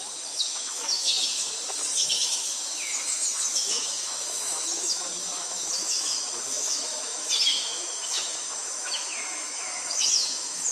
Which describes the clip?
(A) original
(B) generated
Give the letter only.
B